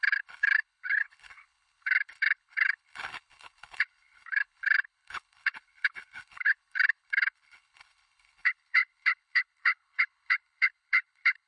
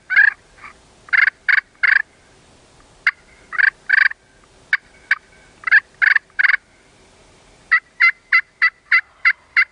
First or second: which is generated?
first